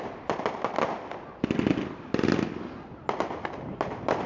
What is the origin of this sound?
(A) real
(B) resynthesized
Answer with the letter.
A